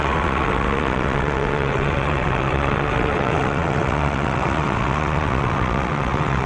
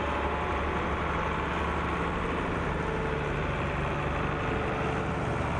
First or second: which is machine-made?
first